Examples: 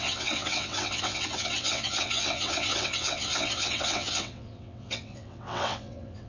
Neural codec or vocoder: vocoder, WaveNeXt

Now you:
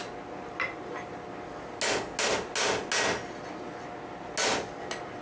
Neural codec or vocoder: none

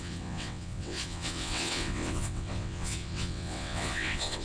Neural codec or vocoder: vocoder, WaveNeXt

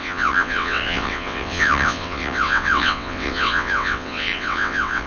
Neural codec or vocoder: vocoder, WaveNeXt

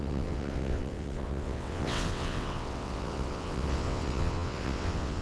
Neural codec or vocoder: vocoder, WaveNeXt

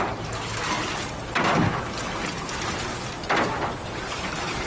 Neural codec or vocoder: none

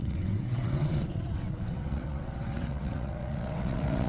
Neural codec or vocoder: vocoder, WaveNeXt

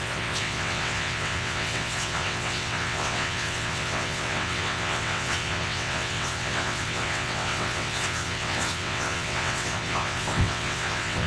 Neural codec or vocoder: vocoder, WaveNeXt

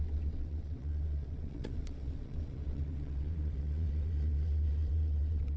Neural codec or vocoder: vocoder, WaveNeXt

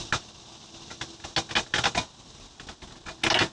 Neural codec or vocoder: none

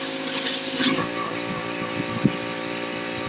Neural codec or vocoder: none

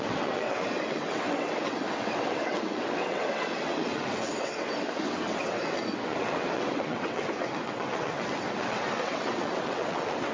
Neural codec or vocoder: vocoder, WaveNeXt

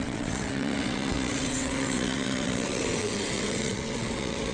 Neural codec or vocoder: vocoder, WaveNeXt